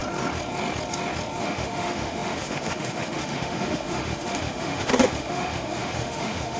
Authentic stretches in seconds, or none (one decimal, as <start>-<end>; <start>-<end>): 0.0-1.4